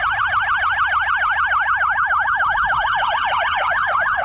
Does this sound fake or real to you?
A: real